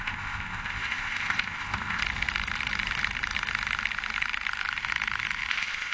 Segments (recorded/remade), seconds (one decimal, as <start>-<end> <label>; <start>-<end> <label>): 0.0-2.0 remade; 2.0-5.5 recorded; 5.5-5.9 remade